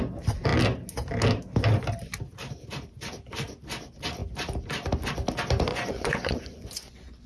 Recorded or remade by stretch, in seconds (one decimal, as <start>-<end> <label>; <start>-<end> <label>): 0.0-5.7 recorded; 5.7-7.3 remade